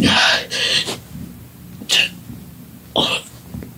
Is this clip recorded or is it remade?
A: recorded